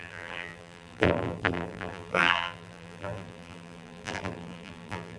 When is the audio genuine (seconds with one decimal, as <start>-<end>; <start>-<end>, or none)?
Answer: none